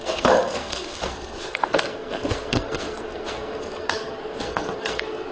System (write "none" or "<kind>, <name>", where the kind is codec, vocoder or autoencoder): codec, SNAC